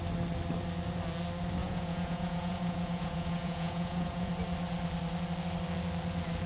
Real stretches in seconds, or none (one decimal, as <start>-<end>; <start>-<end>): 0.0-1.6; 4.3-6.5

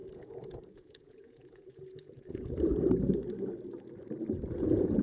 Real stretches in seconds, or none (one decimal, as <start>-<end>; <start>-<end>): 2.7-4.6

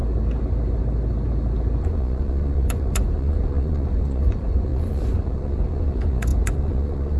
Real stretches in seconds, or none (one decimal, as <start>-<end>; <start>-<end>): 0.0-1.8

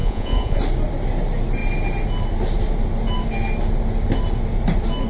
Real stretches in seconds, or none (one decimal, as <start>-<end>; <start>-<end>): 0.6-5.1

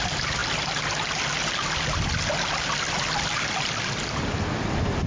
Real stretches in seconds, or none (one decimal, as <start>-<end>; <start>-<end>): 0.0-5.1

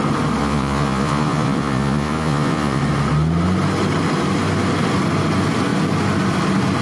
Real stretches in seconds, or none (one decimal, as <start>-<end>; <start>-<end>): 0.0-0.4; 2.8-6.8

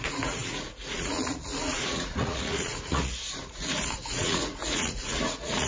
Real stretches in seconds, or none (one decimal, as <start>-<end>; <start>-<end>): none

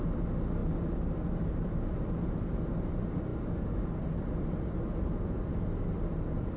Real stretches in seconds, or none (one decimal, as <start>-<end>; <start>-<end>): 0.0-6.6